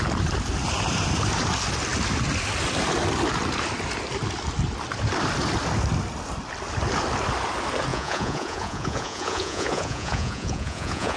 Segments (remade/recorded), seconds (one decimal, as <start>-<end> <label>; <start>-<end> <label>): 0.0-7.9 recorded; 7.9-11.2 remade

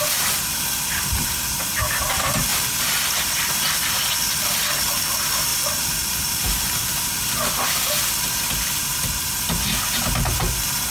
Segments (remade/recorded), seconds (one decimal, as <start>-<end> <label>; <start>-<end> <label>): 0.0-2.5 recorded; 2.5-4.4 remade; 4.4-5.5 recorded; 5.5-7.6 remade; 7.6-10.9 recorded

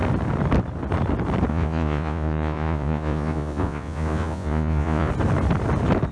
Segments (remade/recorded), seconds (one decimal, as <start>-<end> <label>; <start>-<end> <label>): 0.0-1.5 recorded; 1.5-5.1 remade; 5.1-6.1 recorded

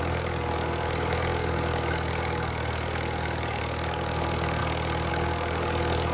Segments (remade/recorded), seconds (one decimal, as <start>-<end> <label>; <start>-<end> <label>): 0.0-4.6 remade; 4.6-5.1 recorded; 5.1-6.1 remade

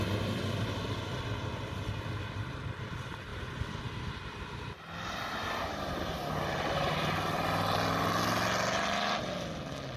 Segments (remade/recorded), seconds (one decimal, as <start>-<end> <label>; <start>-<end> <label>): 0.0-10.0 recorded